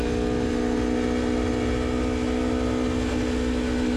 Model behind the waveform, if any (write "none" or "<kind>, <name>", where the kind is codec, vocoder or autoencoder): none